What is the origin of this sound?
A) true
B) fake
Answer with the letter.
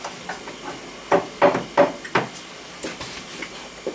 A